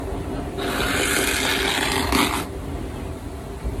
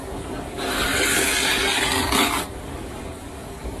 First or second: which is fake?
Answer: second